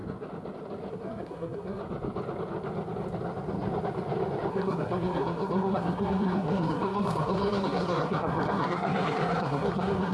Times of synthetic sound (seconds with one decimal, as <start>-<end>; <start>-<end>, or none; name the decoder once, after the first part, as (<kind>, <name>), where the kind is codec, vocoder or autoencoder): 0.9-1.8 (codec, SNAC); 4.5-10.1